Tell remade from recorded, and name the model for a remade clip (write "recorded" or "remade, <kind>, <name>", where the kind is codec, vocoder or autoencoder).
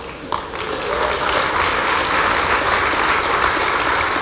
recorded